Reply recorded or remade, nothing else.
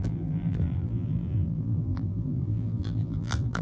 remade